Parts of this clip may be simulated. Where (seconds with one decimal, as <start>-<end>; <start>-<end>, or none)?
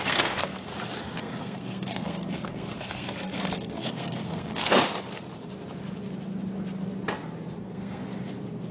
0.0-0.7; 1.2-4.8; 7.6-8.0